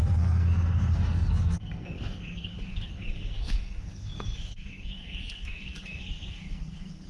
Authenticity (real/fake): fake